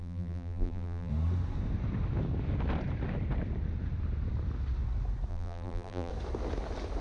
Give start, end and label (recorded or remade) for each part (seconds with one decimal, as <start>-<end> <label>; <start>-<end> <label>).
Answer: 0.0-1.1 remade; 1.1-5.3 recorded; 5.3-6.1 remade; 6.1-7.0 recorded